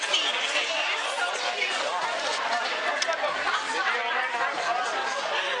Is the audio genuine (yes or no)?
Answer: yes